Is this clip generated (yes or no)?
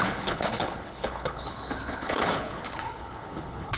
yes